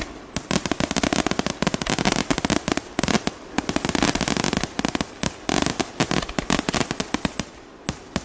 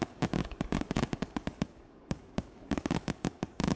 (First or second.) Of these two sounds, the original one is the first